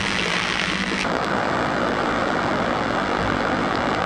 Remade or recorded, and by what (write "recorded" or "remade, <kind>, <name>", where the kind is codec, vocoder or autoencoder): remade, vocoder, BigVGAN v2